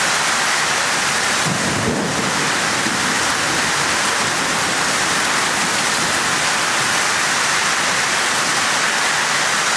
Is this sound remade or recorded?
recorded